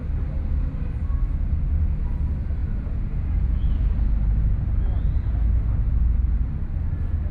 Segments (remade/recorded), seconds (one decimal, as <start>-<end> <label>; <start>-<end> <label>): 0.0-2.6 recorded; 2.6-3.6 remade; 3.6-7.3 recorded